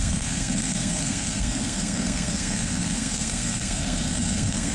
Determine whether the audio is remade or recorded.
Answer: remade